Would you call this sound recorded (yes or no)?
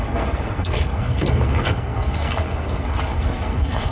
no